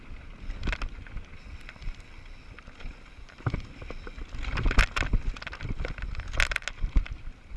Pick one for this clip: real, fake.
real